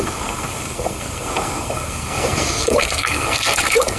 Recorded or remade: remade